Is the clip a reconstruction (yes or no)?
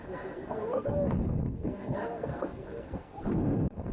yes